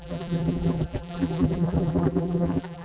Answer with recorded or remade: remade